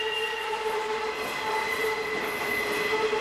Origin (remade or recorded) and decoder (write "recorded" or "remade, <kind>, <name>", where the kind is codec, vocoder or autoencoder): recorded